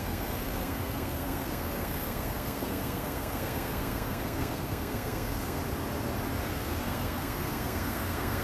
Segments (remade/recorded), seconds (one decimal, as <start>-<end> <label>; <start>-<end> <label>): 0.0-5.6 remade; 5.6-6.5 recorded; 6.5-8.4 remade